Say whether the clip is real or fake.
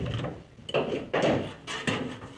real